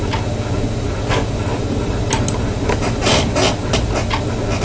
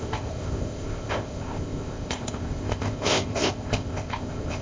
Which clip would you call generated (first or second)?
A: second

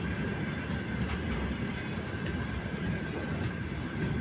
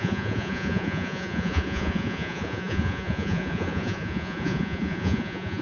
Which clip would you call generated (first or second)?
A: second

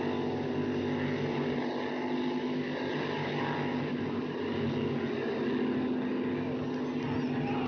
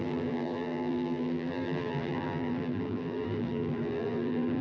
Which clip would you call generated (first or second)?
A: second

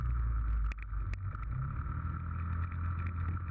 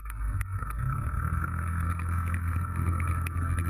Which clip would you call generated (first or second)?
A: second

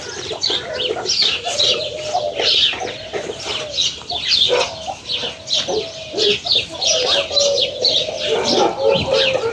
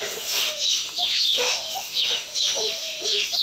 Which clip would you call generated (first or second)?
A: second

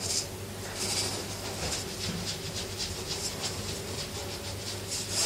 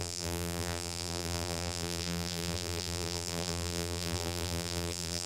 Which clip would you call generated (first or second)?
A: second